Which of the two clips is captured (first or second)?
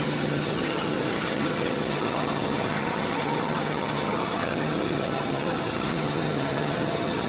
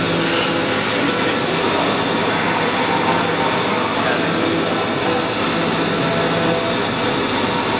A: second